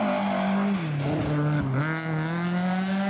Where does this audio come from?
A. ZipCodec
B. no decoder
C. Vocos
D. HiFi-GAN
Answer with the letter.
B